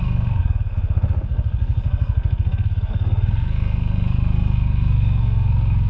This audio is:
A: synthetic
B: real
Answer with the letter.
A